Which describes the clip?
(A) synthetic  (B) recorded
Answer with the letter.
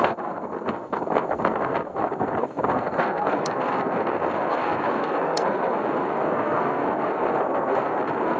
A